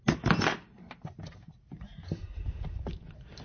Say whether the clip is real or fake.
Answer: real